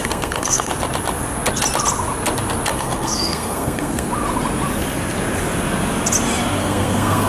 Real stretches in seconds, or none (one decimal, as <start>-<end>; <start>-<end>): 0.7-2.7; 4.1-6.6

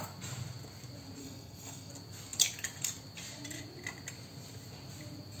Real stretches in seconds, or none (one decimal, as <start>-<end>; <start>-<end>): 0.0-1.2; 1.9-5.4

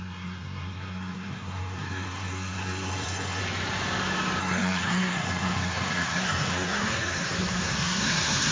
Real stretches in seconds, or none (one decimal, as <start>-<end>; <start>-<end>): 3.4-4.4

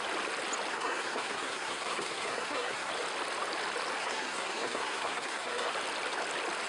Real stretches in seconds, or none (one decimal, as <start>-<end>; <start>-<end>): 0.0-0.7; 2.9-4.0; 5.7-6.7

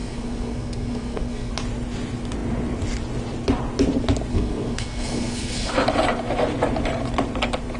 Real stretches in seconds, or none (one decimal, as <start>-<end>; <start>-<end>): 1.5-4.3; 5.7-7.8

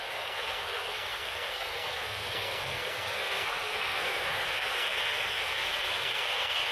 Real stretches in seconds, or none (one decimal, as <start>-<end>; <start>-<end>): none

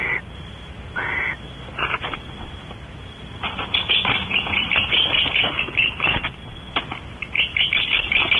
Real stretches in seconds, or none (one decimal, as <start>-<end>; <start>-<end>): 0.0-8.4

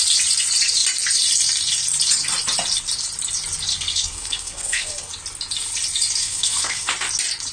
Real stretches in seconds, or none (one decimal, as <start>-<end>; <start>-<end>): 0.0-3.7; 5.1-6.2; 6.9-7.5